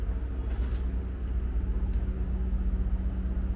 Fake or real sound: real